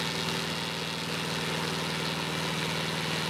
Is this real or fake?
real